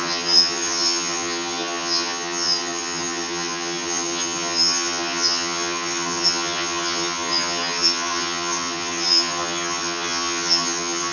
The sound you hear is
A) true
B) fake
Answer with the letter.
B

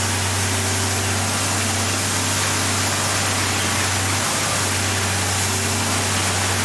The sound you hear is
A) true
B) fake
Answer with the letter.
A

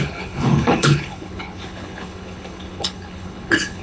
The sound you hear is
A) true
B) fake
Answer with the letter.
B